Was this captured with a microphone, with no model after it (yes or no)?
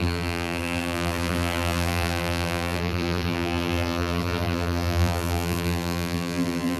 no